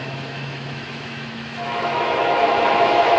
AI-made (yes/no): yes